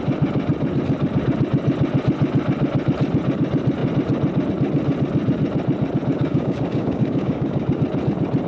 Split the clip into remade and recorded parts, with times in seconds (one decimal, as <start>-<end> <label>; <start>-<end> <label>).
0.0-6.1 recorded; 6.1-7.8 remade; 7.8-8.5 recorded